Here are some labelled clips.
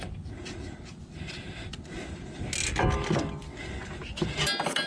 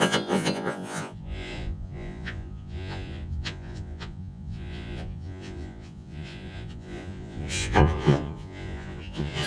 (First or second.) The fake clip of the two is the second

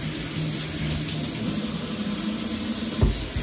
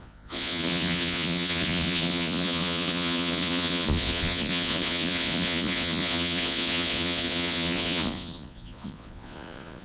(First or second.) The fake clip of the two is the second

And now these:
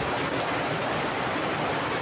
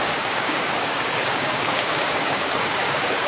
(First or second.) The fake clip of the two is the second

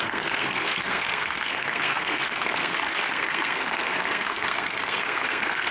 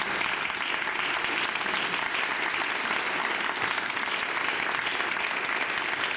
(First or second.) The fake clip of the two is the first